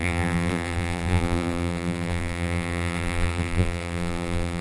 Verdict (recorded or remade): remade